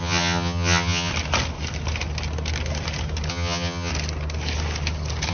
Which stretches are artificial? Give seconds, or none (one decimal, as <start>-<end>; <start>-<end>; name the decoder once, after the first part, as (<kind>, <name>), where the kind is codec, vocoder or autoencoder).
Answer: 0.0-1.1 (vocoder, HiFi-GAN); 3.3-3.9